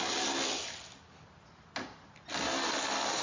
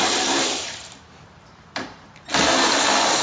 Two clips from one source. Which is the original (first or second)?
first